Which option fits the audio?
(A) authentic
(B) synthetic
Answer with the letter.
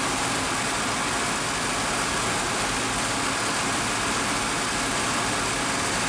A